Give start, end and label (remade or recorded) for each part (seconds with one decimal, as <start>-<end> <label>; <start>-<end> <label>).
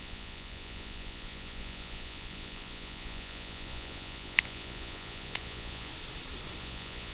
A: 0.0-5.9 remade; 5.9-6.6 recorded; 6.6-7.1 remade